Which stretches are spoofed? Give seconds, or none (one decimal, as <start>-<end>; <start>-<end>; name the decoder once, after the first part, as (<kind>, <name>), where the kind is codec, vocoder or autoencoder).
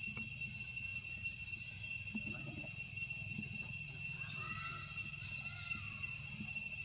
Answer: none